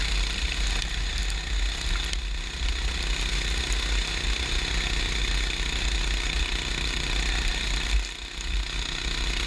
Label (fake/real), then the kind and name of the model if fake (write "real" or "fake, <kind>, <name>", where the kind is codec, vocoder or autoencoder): real